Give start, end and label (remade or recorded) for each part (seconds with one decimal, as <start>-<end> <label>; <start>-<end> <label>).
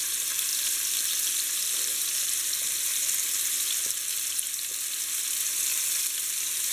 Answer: 0.0-6.7 recorded